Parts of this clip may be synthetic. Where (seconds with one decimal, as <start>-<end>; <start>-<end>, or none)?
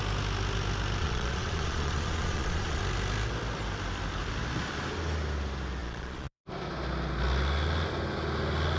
1.0-2.8; 5.8-6.4